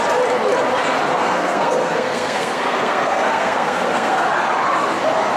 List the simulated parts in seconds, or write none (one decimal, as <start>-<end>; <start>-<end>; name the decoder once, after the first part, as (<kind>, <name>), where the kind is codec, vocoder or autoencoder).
1.1-4.3 (codec, SNAC)